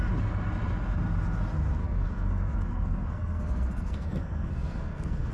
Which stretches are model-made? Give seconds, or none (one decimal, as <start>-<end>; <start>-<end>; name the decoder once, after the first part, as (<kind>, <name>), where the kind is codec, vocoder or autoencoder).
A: 1.8-5.3 (codec, SNAC)